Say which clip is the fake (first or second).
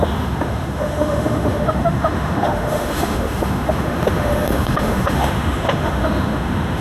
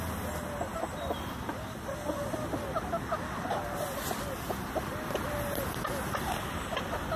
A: first